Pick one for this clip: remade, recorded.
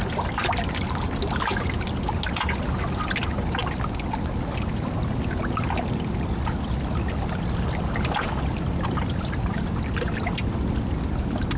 recorded